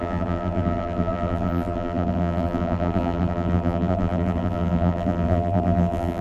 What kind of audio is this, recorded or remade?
remade